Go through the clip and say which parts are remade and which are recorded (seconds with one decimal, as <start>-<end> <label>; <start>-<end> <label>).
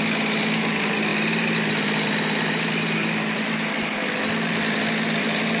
0.0-5.6 recorded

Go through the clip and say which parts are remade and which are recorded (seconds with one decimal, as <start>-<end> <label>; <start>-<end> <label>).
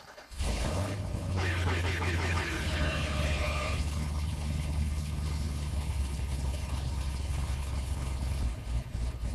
0.0-9.3 remade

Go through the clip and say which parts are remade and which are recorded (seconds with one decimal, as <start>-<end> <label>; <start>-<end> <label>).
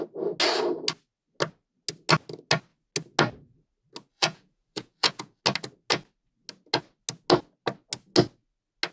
0.0-4.1 recorded; 4.1-5.4 remade; 5.4-8.9 recorded